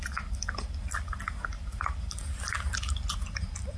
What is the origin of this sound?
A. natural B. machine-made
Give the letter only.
A